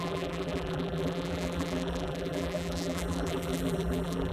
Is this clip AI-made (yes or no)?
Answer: yes